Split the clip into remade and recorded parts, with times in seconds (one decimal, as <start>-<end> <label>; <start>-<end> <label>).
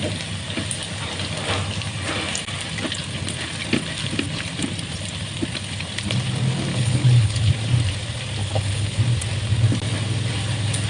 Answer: 0.0-6.7 recorded; 6.7-7.5 remade; 7.5-8.4 recorded; 8.4-9.0 remade; 9.0-10.9 recorded